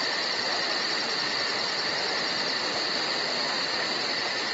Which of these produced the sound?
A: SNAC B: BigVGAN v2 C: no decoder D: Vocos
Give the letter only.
C